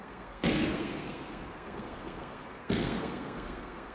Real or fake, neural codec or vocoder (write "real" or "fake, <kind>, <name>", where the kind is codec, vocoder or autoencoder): fake, codec, SNAC